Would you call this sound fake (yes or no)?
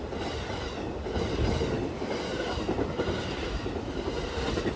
no